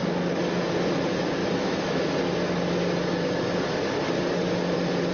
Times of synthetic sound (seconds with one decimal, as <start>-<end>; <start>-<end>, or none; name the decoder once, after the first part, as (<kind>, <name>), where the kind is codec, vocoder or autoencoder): 1.4-2.1 (autoencoder, DAC-VAE)